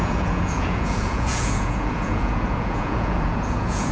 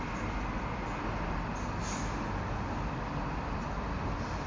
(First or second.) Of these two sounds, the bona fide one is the second